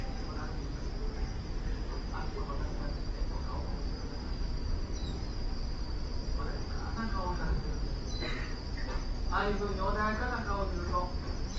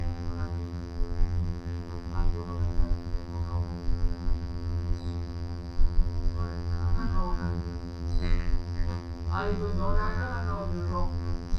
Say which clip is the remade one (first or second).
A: second